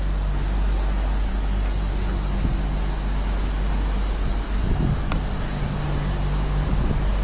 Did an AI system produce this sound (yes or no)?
no